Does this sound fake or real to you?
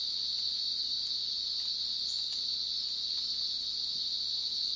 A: real